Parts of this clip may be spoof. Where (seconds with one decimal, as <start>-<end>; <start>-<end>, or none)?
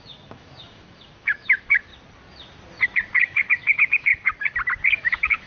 0.0-1.9; 3.2-4.1; 4.9-5.5